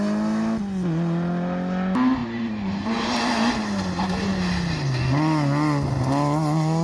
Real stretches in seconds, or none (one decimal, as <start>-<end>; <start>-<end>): 0.0-2.2; 3.2-6.8